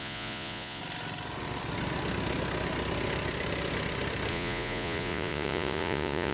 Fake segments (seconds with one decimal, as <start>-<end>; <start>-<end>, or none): 0.0-0.8; 4.3-6.3